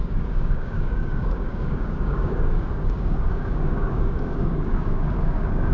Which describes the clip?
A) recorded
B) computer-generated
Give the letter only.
B